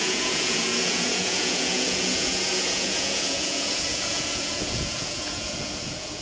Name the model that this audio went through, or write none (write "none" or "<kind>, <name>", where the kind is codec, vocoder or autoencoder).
vocoder, Vocos